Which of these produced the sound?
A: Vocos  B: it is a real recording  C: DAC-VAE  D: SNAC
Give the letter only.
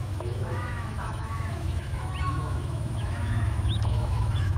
C